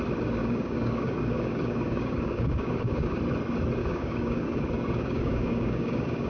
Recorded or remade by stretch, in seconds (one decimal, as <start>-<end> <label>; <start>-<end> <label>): 0.0-0.4 recorded; 0.4-3.2 remade; 3.2-3.8 recorded; 3.8-6.3 remade